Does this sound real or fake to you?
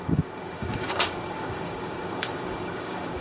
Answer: fake